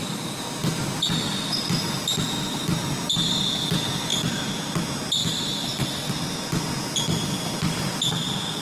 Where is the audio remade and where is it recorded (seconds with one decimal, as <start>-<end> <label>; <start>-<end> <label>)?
0.0-5.2 recorded; 5.2-6.1 remade; 6.1-8.6 recorded